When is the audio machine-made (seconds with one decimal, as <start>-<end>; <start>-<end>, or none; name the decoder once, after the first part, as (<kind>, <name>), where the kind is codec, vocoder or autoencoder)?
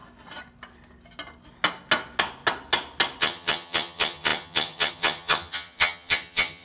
3.2-6.6 (vocoder, HiFi-GAN)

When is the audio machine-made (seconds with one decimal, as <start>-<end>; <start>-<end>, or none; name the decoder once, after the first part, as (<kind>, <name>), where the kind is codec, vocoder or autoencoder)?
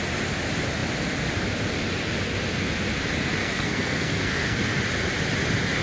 3.4-4.8 (codec, SNAC)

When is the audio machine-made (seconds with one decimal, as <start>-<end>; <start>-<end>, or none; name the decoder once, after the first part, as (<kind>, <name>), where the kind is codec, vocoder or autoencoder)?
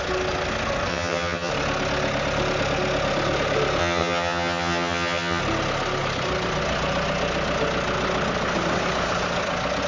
0.9-1.5 (vocoder, HiFi-GAN); 3.8-5.4